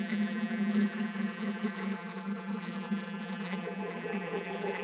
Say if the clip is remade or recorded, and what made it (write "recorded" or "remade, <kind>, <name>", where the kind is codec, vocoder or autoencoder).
remade, vocoder, BigVGAN v2